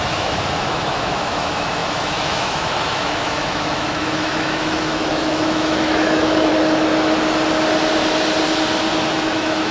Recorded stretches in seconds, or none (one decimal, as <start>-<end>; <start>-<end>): 6.5-9.1